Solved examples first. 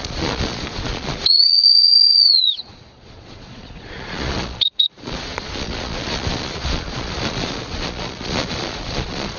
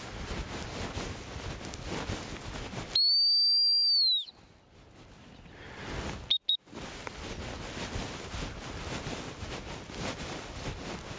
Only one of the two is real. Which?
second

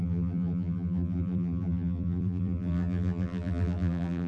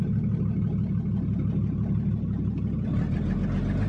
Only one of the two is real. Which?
second